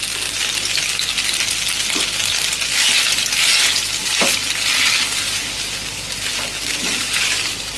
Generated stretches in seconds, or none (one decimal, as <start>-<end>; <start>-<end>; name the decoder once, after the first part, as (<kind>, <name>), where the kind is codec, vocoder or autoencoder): none